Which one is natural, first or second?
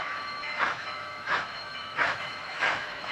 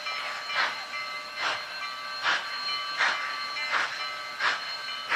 second